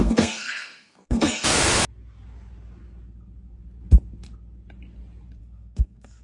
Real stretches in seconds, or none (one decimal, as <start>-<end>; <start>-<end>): 1.7-5.4